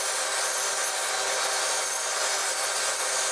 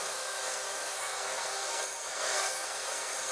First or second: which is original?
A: first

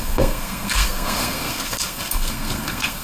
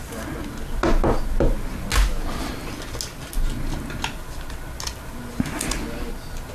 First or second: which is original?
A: second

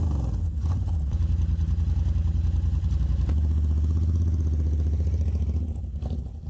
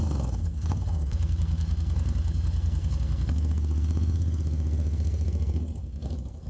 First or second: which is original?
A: first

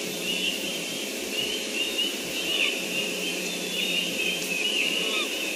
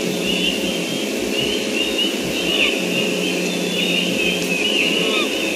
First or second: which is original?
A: second